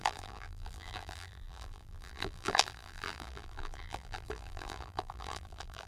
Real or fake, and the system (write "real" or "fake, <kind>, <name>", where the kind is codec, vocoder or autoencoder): fake, vocoder, BigVGAN v2